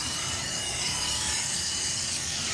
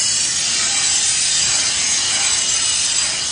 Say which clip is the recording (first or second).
second